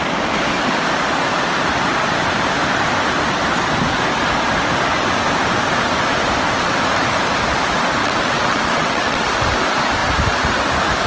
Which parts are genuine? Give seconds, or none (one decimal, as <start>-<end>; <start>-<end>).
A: 0.0-8.0; 9.3-11.1